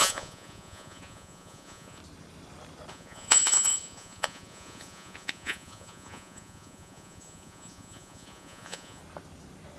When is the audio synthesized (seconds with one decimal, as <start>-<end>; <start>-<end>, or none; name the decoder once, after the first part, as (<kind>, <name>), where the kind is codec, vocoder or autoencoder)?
0.0-2.0 (vocoder, Vocos); 2.9-9.0